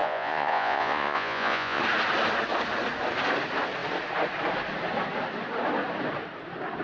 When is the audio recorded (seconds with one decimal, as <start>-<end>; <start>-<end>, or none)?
1.8-6.8